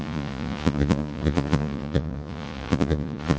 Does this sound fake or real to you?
fake